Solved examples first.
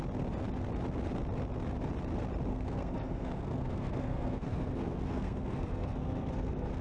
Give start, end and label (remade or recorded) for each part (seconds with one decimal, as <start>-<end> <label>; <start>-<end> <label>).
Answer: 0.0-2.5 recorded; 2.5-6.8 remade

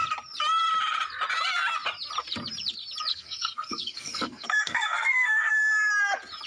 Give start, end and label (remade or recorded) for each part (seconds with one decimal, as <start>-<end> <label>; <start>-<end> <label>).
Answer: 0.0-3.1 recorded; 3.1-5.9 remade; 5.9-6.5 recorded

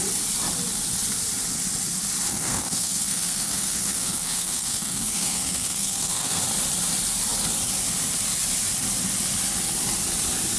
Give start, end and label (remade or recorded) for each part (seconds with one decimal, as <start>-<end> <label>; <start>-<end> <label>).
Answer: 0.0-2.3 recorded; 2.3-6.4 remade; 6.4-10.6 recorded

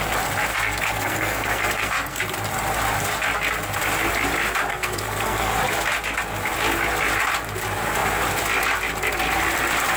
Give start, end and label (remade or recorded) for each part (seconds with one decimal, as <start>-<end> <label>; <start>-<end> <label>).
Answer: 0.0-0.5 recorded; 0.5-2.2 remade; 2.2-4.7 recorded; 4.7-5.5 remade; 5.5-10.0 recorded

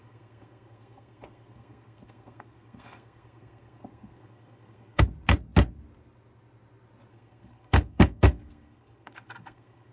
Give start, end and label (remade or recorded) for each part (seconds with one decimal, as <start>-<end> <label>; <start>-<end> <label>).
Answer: 0.0-5.0 remade; 5.0-7.1 recorded; 7.1-9.9 remade